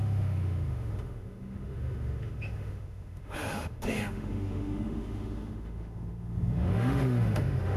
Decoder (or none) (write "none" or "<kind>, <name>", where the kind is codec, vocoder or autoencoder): autoencoder, DAC-VAE